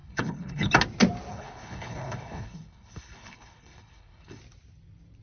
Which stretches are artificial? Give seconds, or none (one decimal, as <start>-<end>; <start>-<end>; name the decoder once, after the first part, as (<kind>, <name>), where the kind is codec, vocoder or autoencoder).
0.0-0.7 (codec, HILCodec); 1.3-4.4